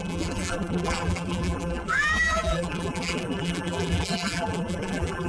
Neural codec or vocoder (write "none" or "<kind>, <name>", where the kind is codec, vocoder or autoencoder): vocoder, BigVGAN v2